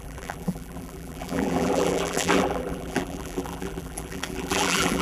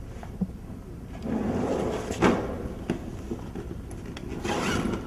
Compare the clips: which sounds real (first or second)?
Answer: second